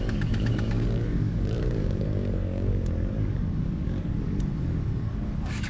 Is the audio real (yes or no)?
no